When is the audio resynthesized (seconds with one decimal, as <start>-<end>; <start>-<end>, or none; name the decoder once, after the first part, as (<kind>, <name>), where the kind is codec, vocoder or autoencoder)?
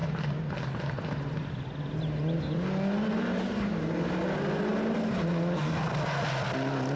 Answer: none